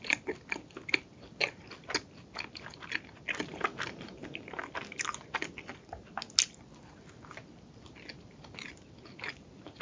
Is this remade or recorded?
recorded